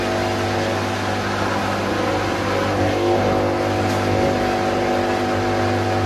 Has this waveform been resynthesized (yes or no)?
no